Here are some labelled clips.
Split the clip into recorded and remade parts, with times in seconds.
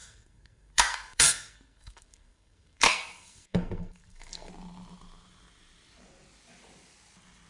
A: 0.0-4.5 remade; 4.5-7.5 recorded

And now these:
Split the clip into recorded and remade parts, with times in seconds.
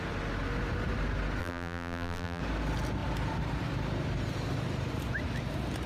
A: 0.0-1.4 recorded; 1.4-2.4 remade; 2.4-5.9 recorded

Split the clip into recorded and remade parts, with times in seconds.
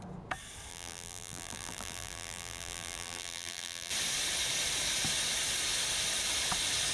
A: 0.0-0.7 recorded; 0.7-3.9 remade; 3.9-6.9 recorded